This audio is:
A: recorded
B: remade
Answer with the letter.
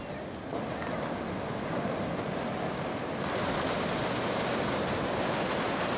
A